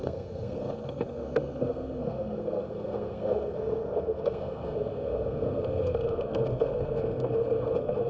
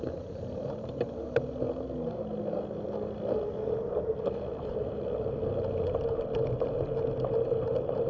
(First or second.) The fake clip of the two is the first